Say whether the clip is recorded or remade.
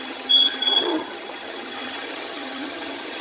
remade